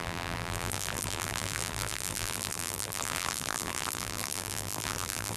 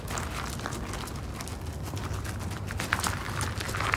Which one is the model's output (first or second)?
first